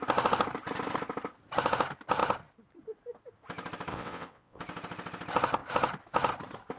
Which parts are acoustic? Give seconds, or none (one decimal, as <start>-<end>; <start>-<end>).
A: 0.0-3.9; 4.6-6.8